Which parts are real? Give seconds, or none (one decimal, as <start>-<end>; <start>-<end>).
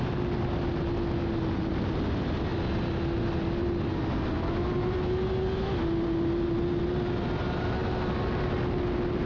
0.0-9.3